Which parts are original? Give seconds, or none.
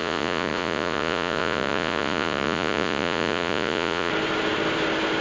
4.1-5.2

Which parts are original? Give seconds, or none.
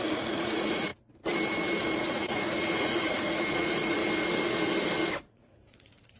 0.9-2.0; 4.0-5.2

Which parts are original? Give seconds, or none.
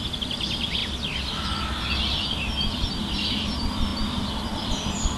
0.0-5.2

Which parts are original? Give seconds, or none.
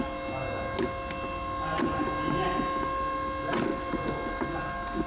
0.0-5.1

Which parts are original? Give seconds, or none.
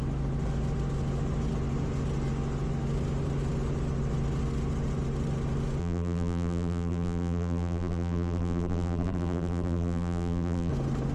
0.0-5.8; 10.7-11.1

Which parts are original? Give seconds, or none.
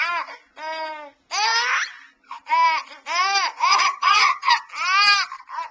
0.0-3.7; 4.5-5.7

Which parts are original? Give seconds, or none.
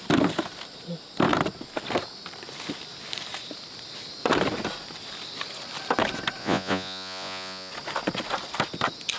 0.0-6.4; 7.7-9.2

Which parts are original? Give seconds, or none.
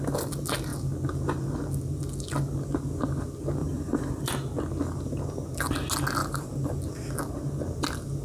0.0-3.6; 4.3-6.2; 6.8-8.2